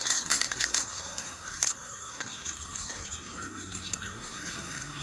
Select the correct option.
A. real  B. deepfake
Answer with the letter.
B